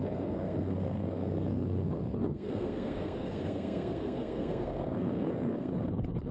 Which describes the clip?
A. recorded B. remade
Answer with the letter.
B